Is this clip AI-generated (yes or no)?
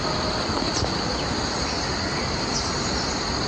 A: no